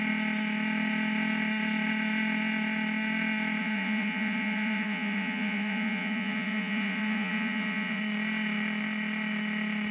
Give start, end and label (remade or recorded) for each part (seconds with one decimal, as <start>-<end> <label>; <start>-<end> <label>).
0.0-3.6 recorded; 3.6-8.0 remade; 8.0-9.9 recorded